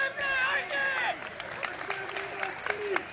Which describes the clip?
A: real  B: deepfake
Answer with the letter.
A